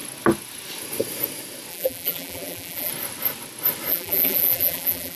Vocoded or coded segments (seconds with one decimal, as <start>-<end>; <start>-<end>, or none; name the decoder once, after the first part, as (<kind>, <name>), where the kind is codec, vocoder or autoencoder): 1.7-2.9 (vocoder, BigVGAN v2); 3.9-5.2